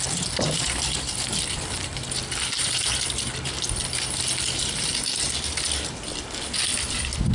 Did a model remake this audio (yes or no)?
no